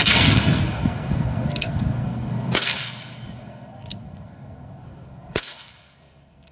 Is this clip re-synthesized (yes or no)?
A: yes